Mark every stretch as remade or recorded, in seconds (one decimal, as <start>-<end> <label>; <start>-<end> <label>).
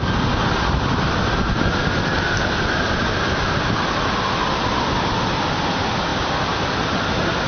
0.0-7.5 recorded